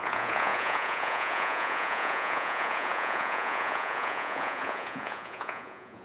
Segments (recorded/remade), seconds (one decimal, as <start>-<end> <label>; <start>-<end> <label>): 0.0-6.0 remade

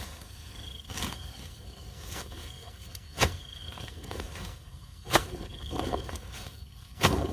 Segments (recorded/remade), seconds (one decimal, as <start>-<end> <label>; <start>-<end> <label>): 0.0-7.3 remade